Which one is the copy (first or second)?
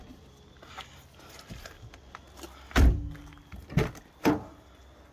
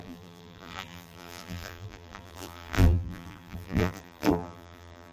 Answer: second